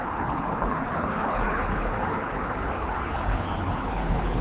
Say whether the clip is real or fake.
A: fake